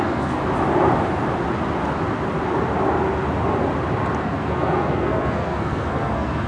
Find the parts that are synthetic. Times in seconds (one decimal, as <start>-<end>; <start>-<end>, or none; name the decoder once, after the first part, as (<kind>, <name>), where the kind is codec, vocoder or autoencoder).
0.0-0.4 (codec, SNAC); 4.2-6.5